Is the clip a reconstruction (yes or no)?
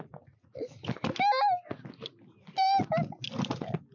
no